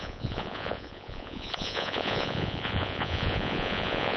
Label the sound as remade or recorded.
remade